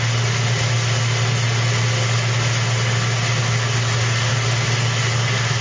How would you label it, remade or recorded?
recorded